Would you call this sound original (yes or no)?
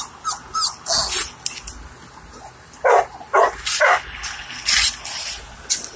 yes